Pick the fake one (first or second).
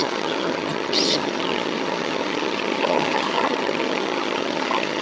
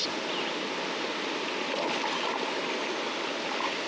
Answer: first